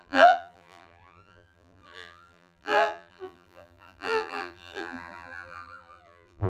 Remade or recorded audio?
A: remade